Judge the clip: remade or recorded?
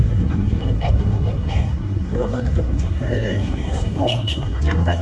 remade